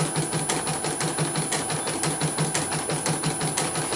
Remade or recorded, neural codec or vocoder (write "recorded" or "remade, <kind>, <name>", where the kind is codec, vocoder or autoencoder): recorded